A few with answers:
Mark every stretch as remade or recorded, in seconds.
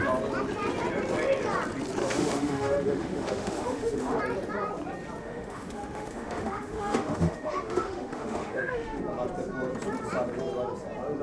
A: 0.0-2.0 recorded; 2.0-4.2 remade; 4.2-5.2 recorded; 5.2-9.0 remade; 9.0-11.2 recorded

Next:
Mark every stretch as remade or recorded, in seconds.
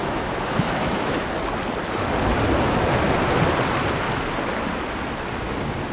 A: 0.0-1.1 remade; 1.1-5.9 recorded